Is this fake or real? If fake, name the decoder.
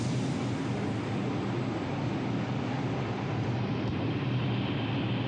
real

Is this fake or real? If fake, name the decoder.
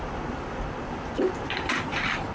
fake, vocoder, BigVGAN v2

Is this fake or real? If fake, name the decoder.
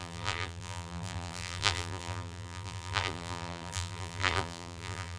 fake, vocoder, BigVGAN v2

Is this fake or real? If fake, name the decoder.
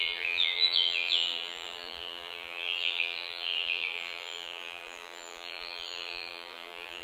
fake, vocoder, BigVGAN v2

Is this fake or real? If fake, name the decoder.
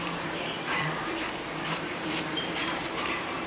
fake, vocoder, BigVGAN v2